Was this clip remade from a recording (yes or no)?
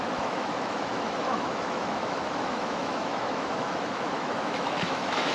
yes